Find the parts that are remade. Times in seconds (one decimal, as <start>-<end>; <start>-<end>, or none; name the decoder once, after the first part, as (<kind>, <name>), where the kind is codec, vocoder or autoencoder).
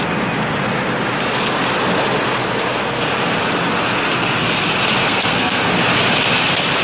5.0-5.7 (codec, SNAC)